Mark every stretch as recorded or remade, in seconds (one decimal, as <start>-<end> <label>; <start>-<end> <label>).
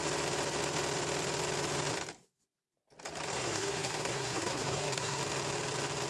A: 0.0-3.3 recorded; 3.3-5.2 remade; 5.2-6.1 recorded